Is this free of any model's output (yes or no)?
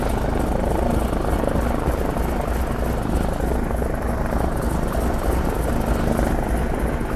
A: yes